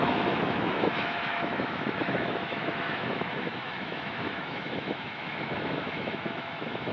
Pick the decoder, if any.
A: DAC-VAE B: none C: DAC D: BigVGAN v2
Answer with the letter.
A